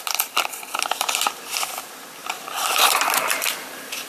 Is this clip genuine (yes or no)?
no